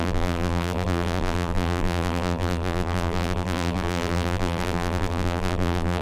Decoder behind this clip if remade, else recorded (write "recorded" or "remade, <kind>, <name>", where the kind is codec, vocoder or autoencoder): remade, vocoder, BigVGAN v2